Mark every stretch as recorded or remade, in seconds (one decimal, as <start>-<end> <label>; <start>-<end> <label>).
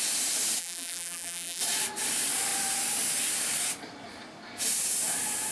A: 0.0-0.6 recorded; 0.6-1.6 remade; 1.6-5.5 recorded